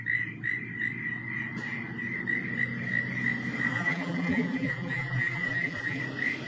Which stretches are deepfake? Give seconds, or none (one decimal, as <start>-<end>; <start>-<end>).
3.7-6.0